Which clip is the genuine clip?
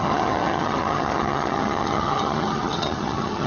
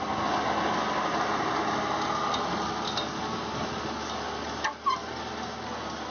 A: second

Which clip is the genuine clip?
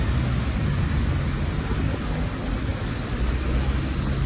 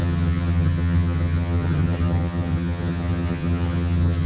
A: first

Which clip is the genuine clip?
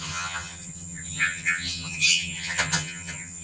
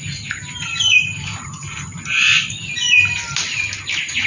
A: second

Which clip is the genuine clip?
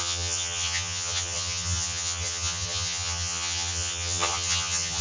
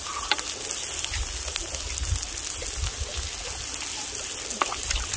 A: second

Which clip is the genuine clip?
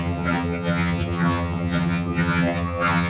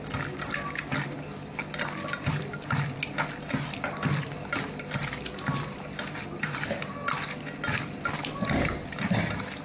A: second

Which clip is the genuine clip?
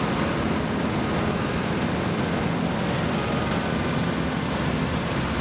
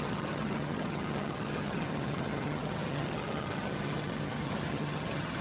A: first